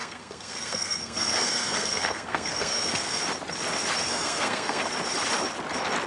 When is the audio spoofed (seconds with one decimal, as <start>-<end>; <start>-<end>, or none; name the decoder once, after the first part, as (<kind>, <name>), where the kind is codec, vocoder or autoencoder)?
0.0-3.2 (codec, SNAC); 4.1-4.9